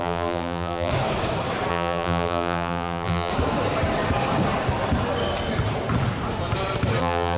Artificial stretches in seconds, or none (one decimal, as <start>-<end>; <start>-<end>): 0.0-0.9; 1.7-3.3; 7.0-7.4